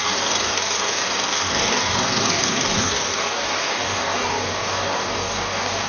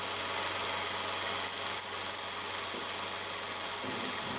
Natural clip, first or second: second